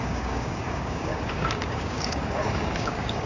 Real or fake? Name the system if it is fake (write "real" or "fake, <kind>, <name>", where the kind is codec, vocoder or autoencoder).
fake, codec, DAC